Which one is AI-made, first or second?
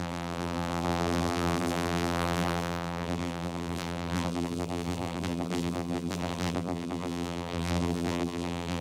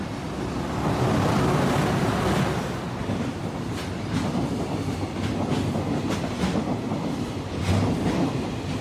first